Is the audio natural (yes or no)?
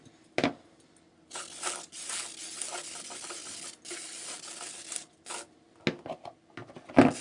yes